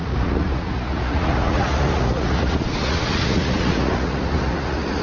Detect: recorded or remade remade